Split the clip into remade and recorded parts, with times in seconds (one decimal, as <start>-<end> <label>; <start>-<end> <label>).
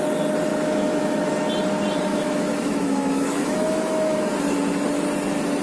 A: 0.0-0.5 recorded; 0.5-1.3 remade; 1.3-2.1 recorded; 2.1-4.3 remade; 4.3-5.6 recorded